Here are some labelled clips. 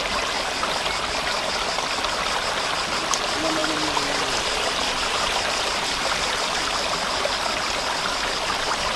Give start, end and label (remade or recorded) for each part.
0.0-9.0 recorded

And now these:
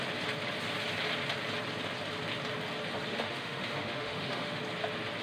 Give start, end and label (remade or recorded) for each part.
0.0-3.1 recorded; 3.1-4.6 remade; 4.6-5.2 recorded